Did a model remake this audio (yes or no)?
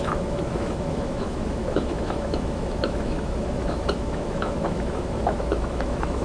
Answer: yes